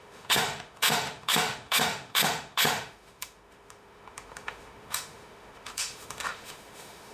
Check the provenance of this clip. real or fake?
fake